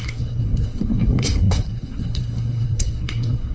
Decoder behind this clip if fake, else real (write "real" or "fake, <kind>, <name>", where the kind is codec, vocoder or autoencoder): fake, codec, SNAC